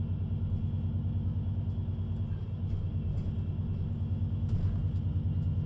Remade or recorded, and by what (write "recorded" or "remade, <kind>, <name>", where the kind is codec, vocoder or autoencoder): recorded